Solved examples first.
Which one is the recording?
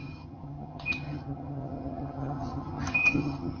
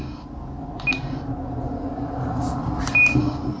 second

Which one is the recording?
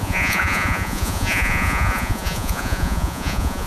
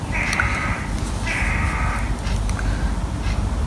second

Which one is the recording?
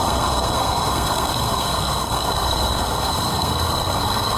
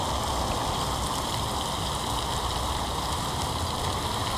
second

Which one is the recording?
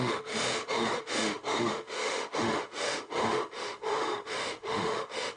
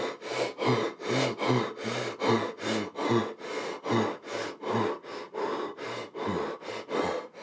second